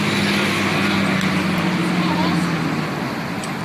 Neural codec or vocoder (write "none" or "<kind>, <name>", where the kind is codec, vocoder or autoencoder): none